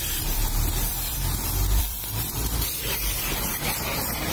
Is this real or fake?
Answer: fake